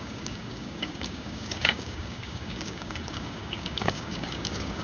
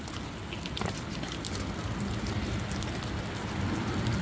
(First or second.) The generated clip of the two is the first